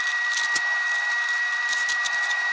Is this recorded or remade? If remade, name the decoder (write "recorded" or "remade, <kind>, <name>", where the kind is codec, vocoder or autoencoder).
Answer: remade, vocoder, BigVGAN v2